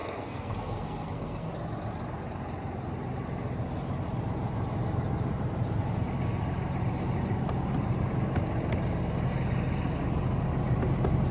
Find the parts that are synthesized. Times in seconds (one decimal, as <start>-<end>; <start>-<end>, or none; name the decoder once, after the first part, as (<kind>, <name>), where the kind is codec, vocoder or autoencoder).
0.0-1.5 (codec, SNAC)